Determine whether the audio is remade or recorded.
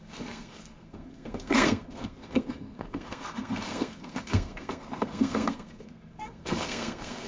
remade